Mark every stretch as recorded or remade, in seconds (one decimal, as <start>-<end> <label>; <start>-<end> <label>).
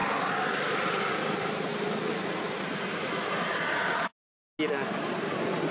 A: 0.0-5.7 recorded